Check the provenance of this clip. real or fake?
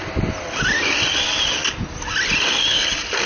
real